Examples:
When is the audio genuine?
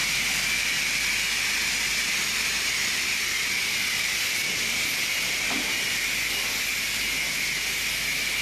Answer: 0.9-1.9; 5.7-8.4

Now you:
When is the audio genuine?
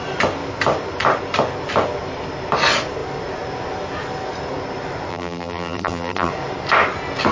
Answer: 0.0-5.1; 6.3-7.3